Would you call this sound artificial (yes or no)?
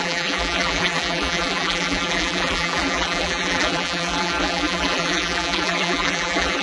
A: yes